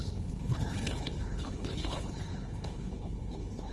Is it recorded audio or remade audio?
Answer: remade